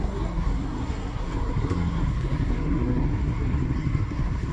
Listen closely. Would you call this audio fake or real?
fake